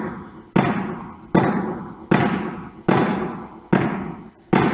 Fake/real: real